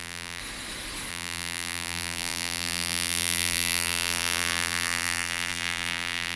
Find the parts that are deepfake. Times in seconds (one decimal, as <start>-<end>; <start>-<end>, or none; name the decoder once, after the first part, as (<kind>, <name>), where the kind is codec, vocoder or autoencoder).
0.0-0.4 (vocoder, BigVGAN v2); 1.1-6.4